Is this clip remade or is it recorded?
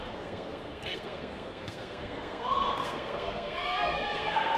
remade